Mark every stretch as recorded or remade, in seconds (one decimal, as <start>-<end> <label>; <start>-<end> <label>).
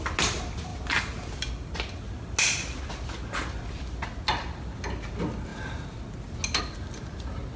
0.0-7.6 recorded